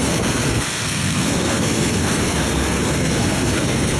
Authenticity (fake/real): fake